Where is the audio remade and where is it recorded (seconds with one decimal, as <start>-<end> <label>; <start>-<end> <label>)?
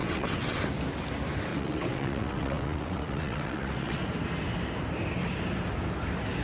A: 0.0-0.6 remade; 0.6-1.5 recorded; 1.5-4.0 remade; 4.0-6.4 recorded